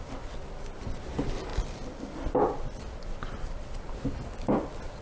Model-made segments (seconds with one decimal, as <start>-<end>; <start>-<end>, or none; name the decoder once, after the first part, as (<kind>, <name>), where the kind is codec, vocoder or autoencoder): 1.5-3.7 (vocoder, BigVGAN v2)